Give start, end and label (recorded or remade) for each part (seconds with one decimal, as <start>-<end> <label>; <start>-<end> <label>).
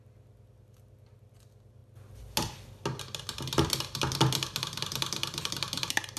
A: 0.0-6.2 recorded